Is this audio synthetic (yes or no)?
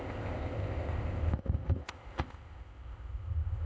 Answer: yes